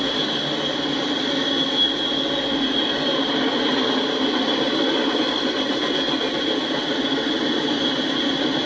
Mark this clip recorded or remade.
recorded